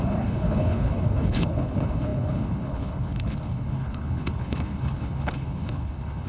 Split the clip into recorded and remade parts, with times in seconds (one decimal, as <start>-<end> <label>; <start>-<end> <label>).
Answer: 0.0-6.3 remade